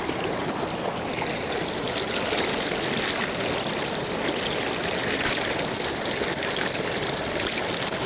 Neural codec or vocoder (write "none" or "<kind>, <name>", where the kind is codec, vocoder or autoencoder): none